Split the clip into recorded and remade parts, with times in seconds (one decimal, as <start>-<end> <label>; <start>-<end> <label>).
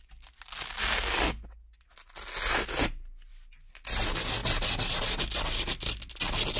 0.0-6.6 recorded